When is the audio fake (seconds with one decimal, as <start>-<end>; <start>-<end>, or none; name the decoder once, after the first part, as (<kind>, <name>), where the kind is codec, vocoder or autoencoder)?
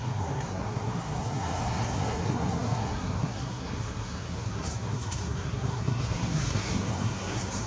0.0-7.7 (codec, SNAC)